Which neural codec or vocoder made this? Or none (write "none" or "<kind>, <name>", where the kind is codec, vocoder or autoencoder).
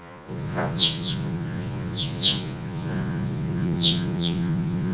vocoder, Vocos